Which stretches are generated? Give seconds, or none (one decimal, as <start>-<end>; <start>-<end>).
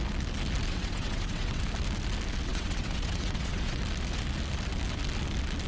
0.7-1.6; 2.5-3.8